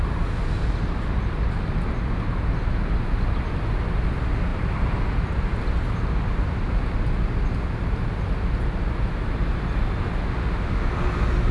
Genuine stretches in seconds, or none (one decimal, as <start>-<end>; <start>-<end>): 0.0-10.2; 10.8-11.5